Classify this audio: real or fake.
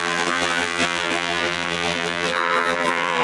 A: fake